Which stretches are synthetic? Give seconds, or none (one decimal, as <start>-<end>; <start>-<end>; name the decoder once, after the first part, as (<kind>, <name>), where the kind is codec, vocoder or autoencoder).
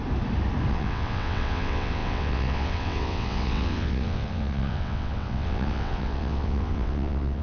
0.7-7.4 (vocoder, WaveNeXt)